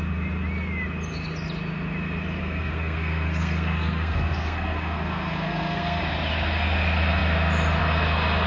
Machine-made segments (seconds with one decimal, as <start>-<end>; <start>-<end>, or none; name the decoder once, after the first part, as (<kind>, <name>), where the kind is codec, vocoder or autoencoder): 2.4-6.0 (codec, SNAC)